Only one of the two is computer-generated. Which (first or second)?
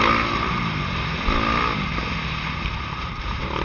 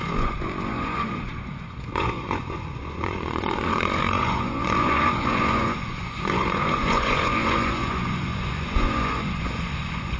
second